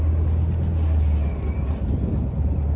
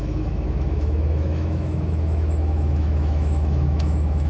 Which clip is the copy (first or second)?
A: second